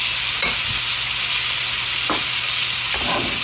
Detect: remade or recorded recorded